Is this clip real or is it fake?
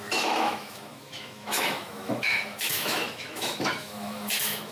fake